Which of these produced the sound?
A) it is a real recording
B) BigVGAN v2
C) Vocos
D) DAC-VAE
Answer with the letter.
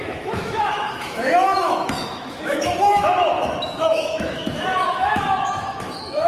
D